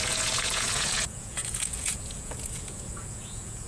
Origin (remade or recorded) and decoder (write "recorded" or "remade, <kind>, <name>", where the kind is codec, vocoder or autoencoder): remade, vocoder, Vocos